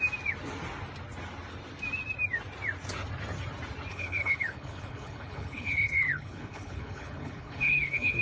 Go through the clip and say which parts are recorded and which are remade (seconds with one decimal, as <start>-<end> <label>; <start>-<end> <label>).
0.0-3.9 recorded; 3.9-8.2 remade

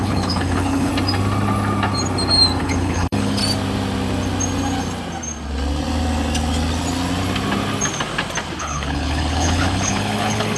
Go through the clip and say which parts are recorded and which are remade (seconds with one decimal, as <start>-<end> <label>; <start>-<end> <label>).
0.0-0.9 remade; 0.9-2.6 recorded; 2.6-3.4 remade; 3.4-8.6 recorded; 8.6-10.6 remade

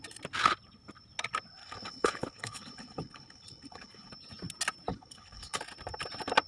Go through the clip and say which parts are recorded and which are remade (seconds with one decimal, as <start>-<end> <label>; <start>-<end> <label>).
0.0-1.6 recorded; 1.6-4.1 remade; 4.1-4.9 recorded; 4.9-5.6 remade; 5.6-6.5 recorded